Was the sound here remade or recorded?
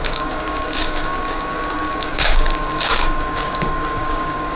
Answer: remade